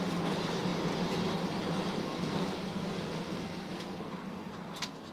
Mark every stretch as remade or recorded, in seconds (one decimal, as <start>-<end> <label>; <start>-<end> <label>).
0.0-2.0 recorded; 2.0-5.1 remade